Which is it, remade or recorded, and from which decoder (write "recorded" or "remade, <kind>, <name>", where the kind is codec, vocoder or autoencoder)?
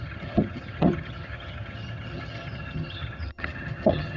remade, vocoder, HiFi-GAN